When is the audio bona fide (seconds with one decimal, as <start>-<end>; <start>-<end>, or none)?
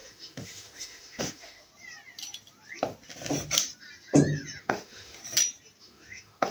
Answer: 1.7-4.6; 5.2-5.8